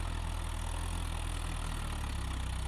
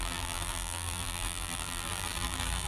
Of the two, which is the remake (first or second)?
second